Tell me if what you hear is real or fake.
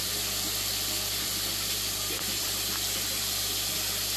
fake